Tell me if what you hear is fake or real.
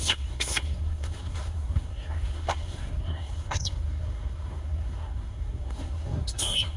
fake